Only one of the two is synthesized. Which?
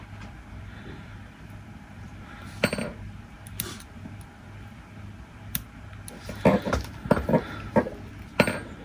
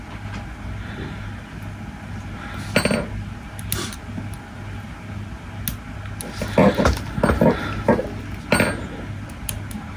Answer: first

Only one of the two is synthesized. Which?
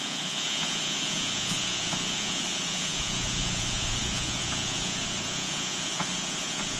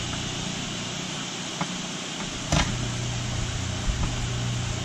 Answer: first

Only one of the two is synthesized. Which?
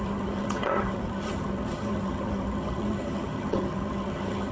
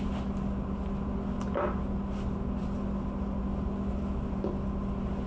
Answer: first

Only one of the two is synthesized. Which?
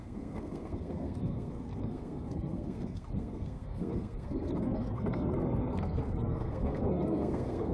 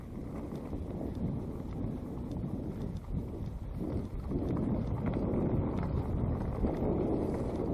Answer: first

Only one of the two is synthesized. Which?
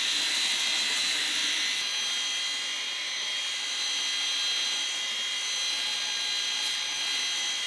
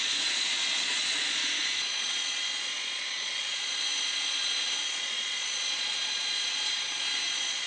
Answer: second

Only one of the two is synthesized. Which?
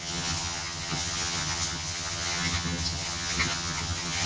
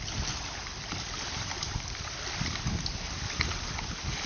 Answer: first